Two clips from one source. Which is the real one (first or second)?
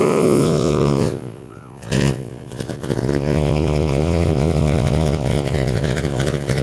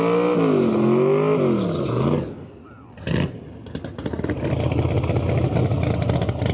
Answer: second